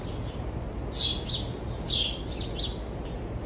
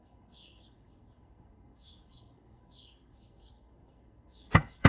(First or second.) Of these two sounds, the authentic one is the first